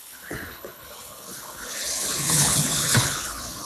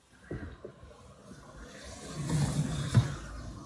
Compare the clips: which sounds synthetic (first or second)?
first